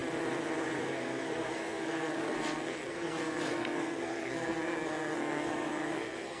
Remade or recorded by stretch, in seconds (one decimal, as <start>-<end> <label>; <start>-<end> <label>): 0.0-0.6 recorded; 0.6-6.4 remade